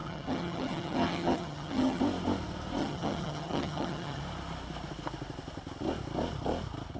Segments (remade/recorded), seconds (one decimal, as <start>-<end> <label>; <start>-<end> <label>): 0.0-2.0 remade; 2.0-2.8 recorded; 2.8-4.2 remade; 4.2-7.0 recorded